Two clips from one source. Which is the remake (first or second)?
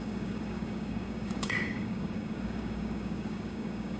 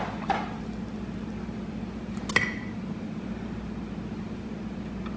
first